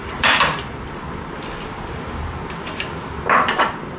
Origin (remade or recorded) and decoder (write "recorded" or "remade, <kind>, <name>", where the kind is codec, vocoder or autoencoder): recorded